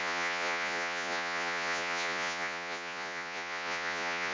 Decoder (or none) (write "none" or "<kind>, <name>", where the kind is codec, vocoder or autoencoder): vocoder, Vocos